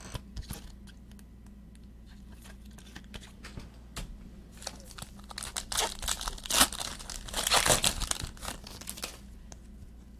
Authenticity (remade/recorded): recorded